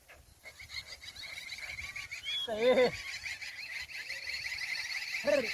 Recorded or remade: recorded